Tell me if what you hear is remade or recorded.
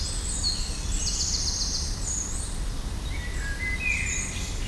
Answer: recorded